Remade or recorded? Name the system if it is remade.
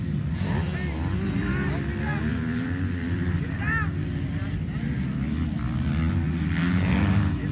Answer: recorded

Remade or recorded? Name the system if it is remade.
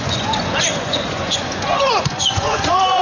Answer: remade, vocoder, Vocos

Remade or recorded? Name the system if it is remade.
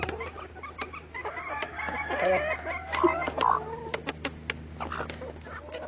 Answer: recorded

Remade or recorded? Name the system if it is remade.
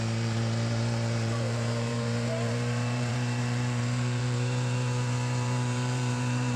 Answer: remade, vocoder, BigVGAN v2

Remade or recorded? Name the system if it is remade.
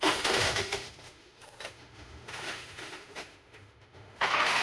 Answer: remade, autoencoder, DAC-VAE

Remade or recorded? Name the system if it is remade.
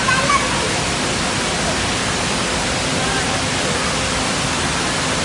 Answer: recorded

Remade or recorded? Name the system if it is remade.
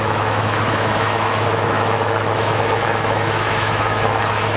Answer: remade, autoencoder, DAC-VAE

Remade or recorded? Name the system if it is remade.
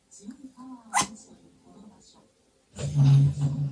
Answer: recorded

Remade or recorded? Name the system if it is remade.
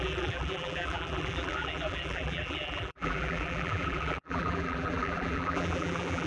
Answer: remade, vocoder, BigVGAN v2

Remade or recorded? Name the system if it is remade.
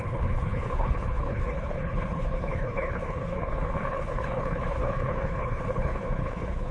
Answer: remade, codec, HILCodec